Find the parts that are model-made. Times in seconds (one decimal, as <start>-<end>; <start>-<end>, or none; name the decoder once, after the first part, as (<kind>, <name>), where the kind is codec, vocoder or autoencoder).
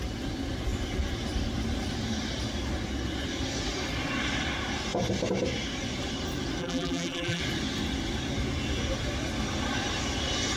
6.6-7.4 (vocoder, BigVGAN v2)